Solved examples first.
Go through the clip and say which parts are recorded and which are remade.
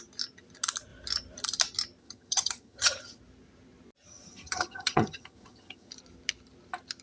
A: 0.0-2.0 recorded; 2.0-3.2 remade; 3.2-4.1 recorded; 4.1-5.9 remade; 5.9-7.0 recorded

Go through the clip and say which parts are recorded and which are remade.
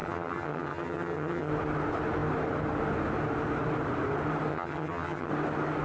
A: 0.0-1.5 remade; 1.5-4.5 recorded; 4.5-5.3 remade; 5.3-5.8 recorded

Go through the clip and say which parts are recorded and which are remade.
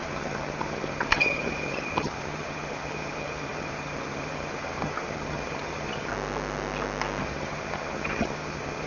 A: 0.0-6.1 remade; 6.1-7.2 recorded; 7.2-8.9 remade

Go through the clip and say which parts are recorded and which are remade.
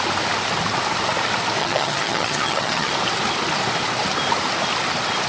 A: 0.0-1.6 recorded; 1.6-2.9 remade; 2.9-5.3 recorded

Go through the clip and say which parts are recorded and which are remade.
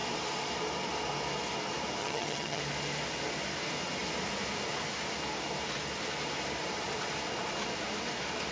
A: 0.0-2.0 recorded; 2.0-2.6 remade; 2.6-8.5 recorded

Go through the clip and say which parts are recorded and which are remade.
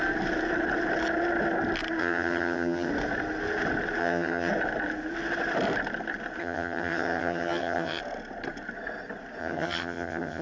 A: 0.0-2.0 recorded; 2.0-2.9 remade; 2.9-4.0 recorded; 4.0-4.5 remade; 4.5-6.4 recorded; 6.4-8.0 remade; 8.0-9.4 recorded; 9.4-10.4 remade